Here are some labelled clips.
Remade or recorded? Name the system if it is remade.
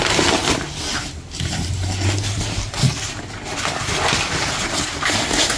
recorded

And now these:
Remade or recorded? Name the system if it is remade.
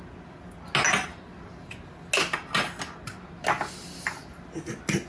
recorded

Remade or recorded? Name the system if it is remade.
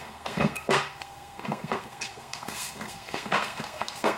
remade, codec, SNAC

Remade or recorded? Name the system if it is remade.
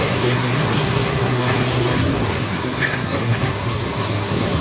remade, codec, SNAC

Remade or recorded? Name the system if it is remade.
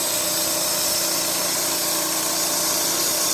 recorded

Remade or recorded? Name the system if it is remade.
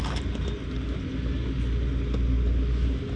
recorded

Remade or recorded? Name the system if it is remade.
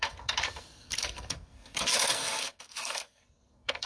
remade, codec, SNAC